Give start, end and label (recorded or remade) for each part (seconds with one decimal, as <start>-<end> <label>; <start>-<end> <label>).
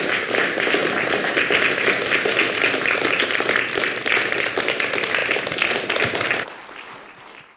0.0-7.6 recorded